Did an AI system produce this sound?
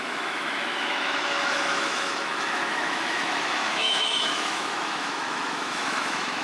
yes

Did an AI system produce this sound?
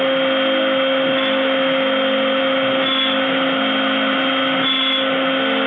no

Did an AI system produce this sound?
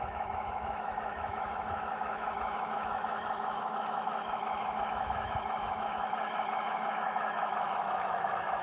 yes